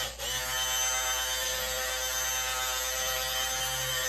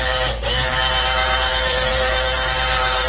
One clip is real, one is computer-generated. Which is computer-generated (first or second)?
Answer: second